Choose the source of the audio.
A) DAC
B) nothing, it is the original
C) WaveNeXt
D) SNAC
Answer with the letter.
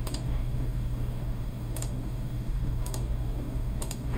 A